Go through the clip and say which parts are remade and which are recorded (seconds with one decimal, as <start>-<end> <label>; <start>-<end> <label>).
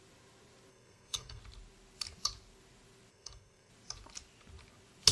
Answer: 0.0-0.7 recorded; 0.7-1.4 remade; 1.4-3.1 recorded; 3.1-3.7 remade; 3.7-5.1 recorded